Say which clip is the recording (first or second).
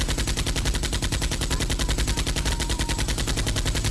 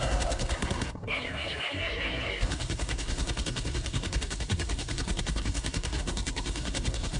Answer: first